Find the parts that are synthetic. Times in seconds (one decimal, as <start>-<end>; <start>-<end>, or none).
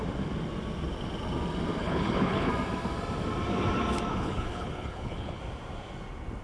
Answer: 1.8-2.5; 4.1-5.4